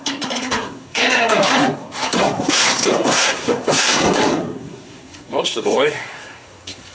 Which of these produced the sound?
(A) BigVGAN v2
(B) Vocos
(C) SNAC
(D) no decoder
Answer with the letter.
C